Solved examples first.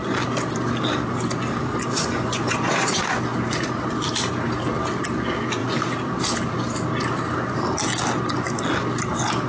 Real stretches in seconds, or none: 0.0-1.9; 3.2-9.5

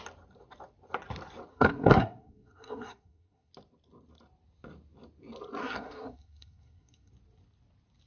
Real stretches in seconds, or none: 0.0-1.5; 3.5-5.6; 7.1-8.1

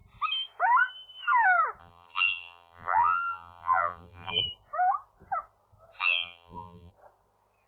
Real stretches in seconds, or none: 0.0-1.8; 4.4-6.0; 6.9-7.7

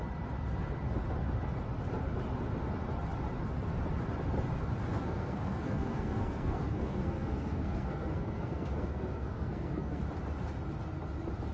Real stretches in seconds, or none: 0.0-4.9; 10.0-11.5

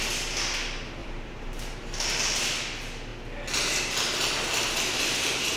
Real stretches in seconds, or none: 0.0-1.0; 2.4-5.6

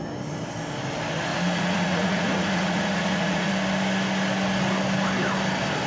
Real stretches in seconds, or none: 0.0-1.3; 3.5-5.9